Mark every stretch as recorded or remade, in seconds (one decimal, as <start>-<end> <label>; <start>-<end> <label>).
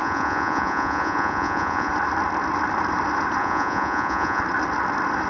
0.0-1.9 remade; 1.9-3.4 recorded; 3.4-4.4 remade; 4.4-5.3 recorded